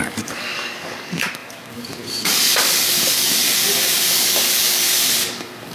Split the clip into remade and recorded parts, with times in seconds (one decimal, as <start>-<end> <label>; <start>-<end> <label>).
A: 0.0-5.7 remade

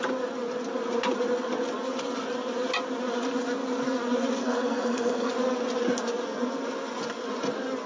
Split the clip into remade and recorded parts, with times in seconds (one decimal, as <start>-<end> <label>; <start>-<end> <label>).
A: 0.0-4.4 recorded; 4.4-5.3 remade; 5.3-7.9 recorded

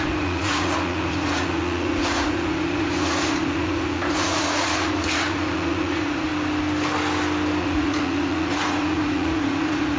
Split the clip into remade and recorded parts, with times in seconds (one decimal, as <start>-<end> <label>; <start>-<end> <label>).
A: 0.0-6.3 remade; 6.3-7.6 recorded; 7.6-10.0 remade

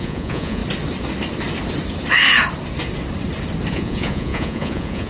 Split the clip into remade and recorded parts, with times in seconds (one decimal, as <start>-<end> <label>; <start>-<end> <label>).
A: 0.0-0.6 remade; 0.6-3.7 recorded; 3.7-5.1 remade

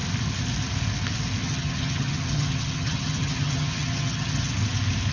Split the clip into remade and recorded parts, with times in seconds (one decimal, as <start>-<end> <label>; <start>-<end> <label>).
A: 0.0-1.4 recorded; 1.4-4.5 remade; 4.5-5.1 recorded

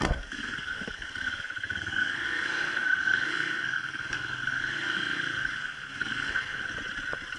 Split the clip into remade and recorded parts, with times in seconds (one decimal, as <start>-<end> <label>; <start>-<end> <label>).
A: 0.0-6.6 remade; 6.6-7.4 recorded